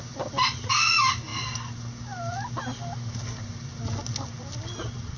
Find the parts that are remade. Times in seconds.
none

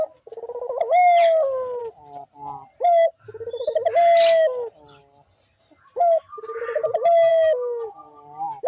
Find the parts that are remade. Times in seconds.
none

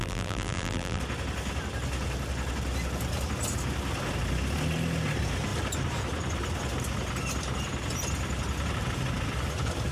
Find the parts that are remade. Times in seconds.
0.0-1.0 (vocoder, BigVGAN v2)

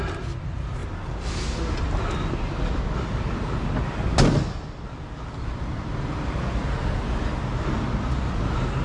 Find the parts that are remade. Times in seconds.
none

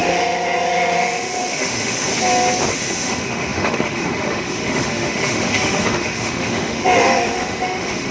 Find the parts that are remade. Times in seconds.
0.0-2.1 (autoencoder, DAC-VAE); 2.7-8.1

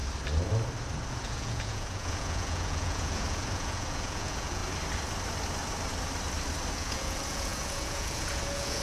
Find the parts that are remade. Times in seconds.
1.1-4.6 (vocoder, Vocos); 6.7-8.8

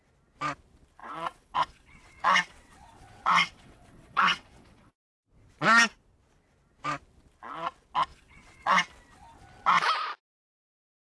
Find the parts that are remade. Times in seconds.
1.0-4.9 (vocoder, WaveNeXt); 8.1-8.8

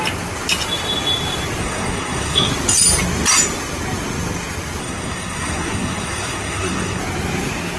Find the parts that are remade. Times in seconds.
1.6-2.5 (codec, SNAC); 4.8-7.0